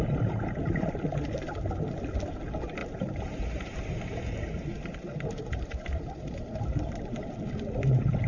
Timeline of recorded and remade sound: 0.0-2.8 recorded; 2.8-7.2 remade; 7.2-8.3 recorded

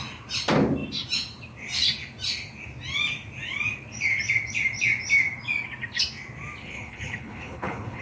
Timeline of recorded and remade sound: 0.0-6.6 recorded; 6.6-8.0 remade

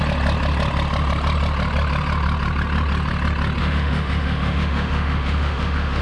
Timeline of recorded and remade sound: 0.0-3.6 recorded; 3.6-6.0 remade